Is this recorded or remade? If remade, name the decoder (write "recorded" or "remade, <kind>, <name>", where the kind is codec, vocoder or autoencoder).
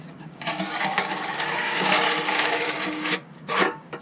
remade, codec, DAC